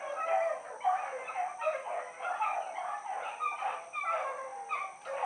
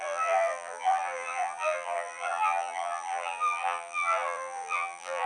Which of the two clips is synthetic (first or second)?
second